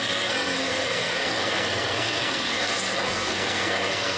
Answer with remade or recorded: remade